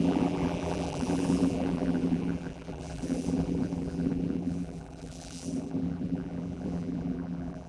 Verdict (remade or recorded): remade